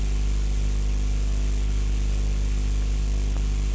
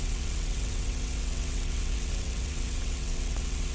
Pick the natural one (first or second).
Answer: first